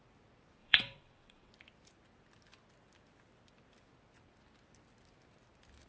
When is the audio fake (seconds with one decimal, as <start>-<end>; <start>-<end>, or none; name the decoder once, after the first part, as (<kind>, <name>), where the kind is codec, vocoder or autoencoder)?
0.6-1.5 (vocoder, WaveNeXt)